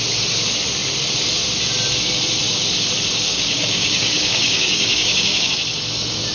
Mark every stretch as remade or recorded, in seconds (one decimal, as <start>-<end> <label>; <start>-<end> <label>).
0.0-3.3 recorded; 3.3-5.5 remade; 5.5-6.3 recorded